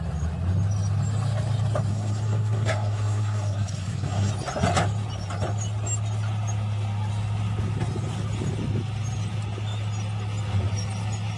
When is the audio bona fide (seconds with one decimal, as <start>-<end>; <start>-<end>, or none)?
0.0-1.9; 4.3-11.4